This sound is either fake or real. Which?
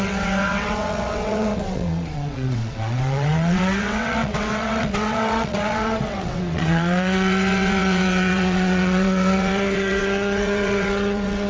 fake